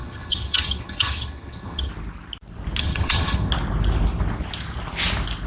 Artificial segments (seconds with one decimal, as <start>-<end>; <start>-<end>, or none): 0.0-1.9; 2.8-3.5